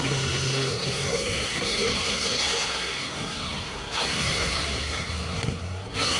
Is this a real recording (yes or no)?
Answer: no